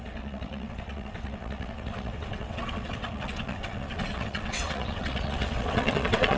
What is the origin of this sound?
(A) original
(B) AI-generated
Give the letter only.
B